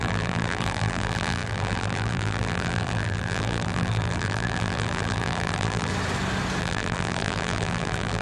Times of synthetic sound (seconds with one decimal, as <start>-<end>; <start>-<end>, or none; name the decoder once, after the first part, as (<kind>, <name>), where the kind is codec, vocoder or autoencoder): 0.0-5.9 (vocoder, BigVGAN v2); 6.6-8.2